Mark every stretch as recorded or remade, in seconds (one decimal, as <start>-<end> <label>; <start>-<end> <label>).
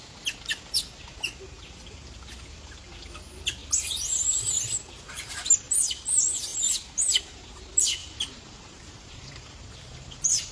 0.0-3.6 recorded; 3.6-5.5 remade; 5.5-6.5 recorded; 6.5-7.6 remade; 7.6-8.0 recorded; 8.0-10.5 remade